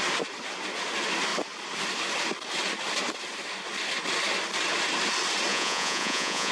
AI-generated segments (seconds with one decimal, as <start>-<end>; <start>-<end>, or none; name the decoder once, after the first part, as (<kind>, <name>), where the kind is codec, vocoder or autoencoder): 5.5-6.5 (vocoder, Vocos)